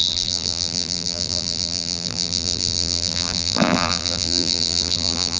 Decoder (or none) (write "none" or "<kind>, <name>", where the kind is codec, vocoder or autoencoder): vocoder, BigVGAN v2